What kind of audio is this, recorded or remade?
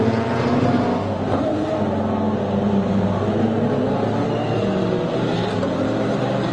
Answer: recorded